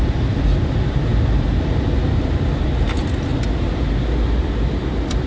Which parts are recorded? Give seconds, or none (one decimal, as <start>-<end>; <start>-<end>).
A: 3.3-4.3